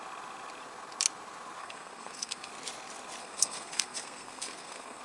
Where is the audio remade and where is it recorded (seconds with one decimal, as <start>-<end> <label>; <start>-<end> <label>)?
0.0-1.6 recorded; 1.6-2.5 remade; 2.5-3.2 recorded; 3.2-5.0 remade